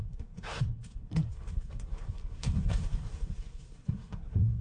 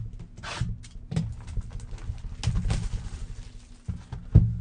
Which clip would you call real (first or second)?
second